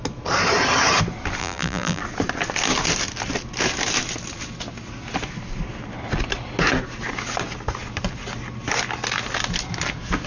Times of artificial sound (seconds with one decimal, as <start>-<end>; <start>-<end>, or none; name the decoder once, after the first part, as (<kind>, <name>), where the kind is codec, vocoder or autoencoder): 1.4-2.0 (vocoder, BigVGAN v2)